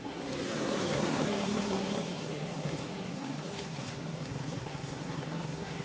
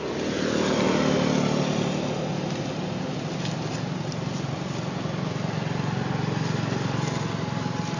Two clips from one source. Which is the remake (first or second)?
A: first